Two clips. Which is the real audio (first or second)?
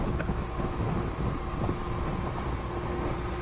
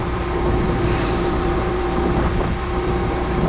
first